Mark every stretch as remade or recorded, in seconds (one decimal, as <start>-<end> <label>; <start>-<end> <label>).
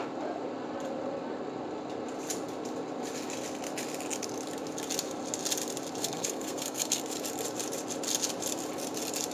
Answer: 0.0-6.0 recorded; 6.0-7.0 remade; 7.0-9.3 recorded